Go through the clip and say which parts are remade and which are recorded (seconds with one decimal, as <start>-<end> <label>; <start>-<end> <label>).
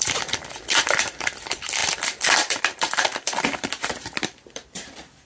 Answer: 0.0-5.3 remade